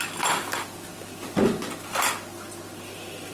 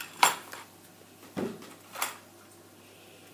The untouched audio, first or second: first